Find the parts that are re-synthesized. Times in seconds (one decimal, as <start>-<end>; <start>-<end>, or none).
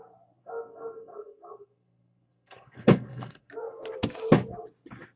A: 0.4-3.5